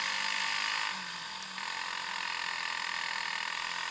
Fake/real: real